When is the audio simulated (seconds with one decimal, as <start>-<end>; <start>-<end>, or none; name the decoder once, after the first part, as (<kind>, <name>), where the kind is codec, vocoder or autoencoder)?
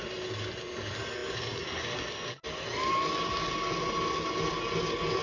none